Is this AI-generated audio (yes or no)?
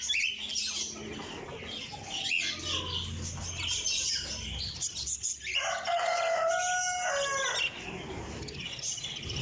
no